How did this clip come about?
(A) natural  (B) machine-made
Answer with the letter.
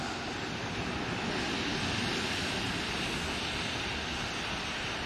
A